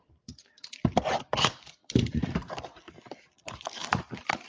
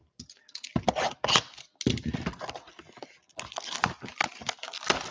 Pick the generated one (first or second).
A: first